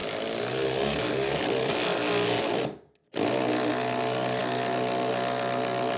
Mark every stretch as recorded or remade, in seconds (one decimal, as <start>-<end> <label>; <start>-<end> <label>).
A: 0.0-6.0 recorded